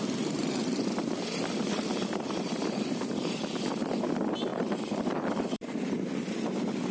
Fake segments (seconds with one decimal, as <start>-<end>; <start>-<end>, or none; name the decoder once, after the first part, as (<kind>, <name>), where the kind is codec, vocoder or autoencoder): 0.4-3.4 (vocoder, BigVGAN v2); 4.5-5.7